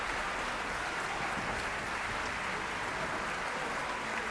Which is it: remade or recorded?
recorded